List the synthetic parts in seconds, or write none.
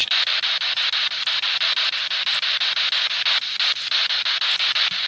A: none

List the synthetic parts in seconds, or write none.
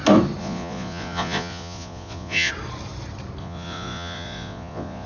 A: 0.4-2.5 (vocoder, Vocos); 3.4-5.1